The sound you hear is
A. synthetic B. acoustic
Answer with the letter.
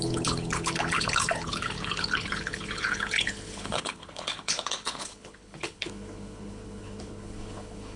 A